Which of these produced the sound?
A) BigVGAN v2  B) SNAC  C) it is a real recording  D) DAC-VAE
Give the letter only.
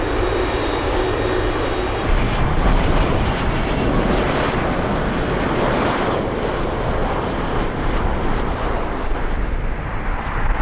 A